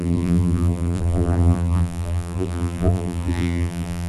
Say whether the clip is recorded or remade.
remade